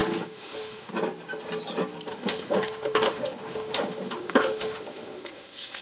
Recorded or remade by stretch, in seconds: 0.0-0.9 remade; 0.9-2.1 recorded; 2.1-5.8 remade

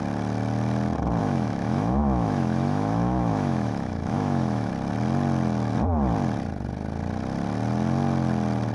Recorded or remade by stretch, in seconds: 0.0-1.2 recorded; 1.2-4.7 remade; 4.7-8.7 recorded